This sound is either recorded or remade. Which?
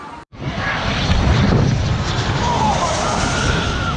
remade